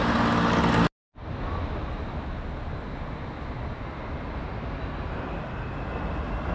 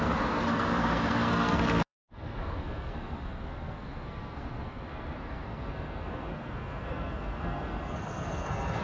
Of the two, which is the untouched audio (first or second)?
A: first